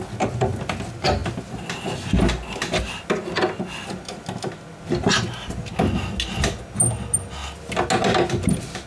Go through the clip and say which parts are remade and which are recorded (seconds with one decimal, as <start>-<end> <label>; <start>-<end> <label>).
0.0-8.9 recorded